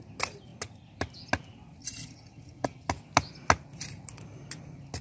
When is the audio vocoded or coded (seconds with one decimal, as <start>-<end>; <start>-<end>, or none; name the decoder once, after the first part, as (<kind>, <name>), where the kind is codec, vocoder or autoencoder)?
1.8-2.9 (vocoder, HiFi-GAN)